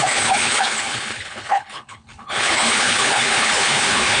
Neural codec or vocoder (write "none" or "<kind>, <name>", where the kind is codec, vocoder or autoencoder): codec, HILCodec